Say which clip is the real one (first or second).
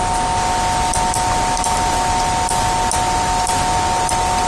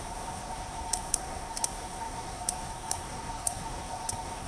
first